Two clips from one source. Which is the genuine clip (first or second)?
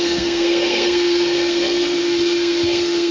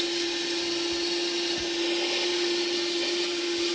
second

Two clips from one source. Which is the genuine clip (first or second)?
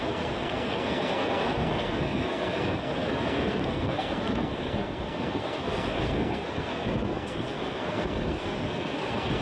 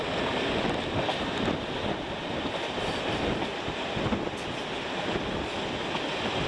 second